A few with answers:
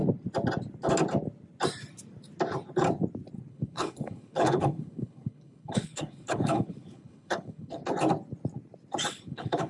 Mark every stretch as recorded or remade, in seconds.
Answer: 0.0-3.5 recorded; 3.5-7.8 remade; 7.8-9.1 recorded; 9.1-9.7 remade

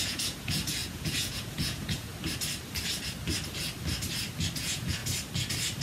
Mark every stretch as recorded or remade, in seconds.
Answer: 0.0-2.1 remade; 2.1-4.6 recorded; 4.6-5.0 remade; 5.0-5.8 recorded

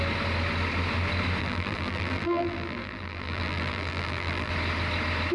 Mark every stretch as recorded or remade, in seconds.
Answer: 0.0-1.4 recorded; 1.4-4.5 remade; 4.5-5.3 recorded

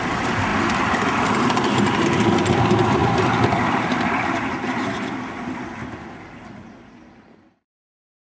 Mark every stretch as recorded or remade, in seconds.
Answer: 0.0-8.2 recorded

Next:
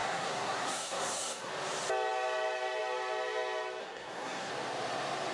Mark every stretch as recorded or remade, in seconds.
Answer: 0.0-1.5 remade; 1.5-3.8 recorded; 3.8-4.5 remade; 4.5-5.3 recorded

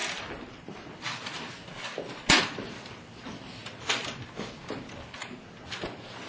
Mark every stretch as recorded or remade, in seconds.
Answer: 0.0-2.4 recorded; 2.4-5.2 remade; 5.2-6.3 recorded

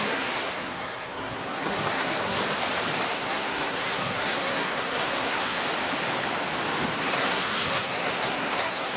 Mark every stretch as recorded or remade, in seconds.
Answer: 0.0-2.4 remade; 2.4-3.1 recorded; 3.1-5.6 remade; 5.6-7.0 recorded; 7.0-9.0 remade